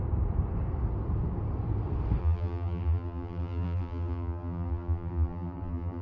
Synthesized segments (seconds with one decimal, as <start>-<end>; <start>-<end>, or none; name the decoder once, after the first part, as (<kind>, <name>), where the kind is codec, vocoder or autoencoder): 2.2-6.0 (vocoder, BigVGAN v2)